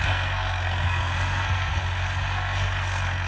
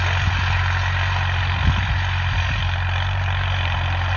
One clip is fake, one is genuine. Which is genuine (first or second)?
second